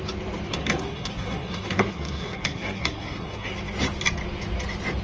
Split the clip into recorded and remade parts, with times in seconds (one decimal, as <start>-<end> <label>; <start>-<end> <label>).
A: 0.0-0.5 recorded; 0.5-3.5 remade; 3.5-5.0 recorded